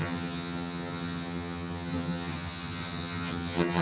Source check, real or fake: fake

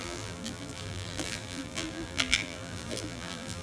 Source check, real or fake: fake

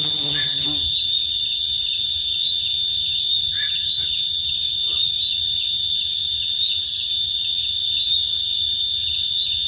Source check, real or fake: fake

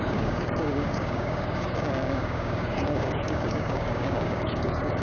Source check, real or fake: fake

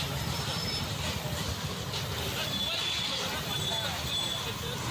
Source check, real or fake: real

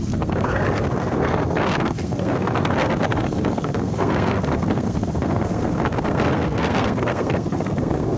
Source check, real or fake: fake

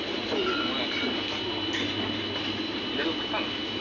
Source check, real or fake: real